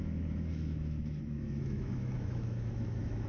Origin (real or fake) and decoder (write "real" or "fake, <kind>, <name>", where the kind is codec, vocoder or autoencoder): fake, autoencoder, DAC-VAE